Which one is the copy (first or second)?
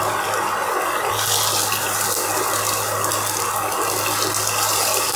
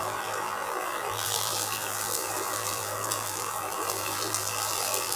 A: second